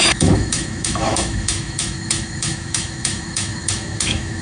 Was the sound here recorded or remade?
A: remade